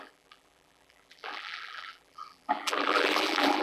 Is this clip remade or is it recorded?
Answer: remade